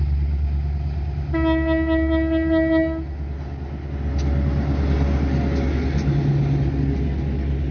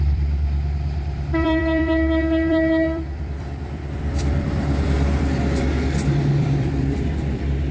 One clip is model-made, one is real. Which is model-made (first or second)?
second